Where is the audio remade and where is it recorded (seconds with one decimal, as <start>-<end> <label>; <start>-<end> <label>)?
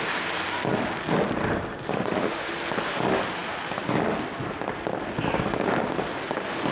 0.0-1.9 recorded; 1.9-2.5 remade; 2.5-6.7 recorded